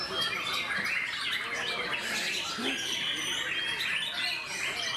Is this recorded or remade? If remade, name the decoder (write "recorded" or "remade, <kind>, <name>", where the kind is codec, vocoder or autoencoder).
recorded